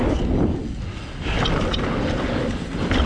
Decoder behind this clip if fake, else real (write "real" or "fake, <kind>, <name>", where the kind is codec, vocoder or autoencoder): real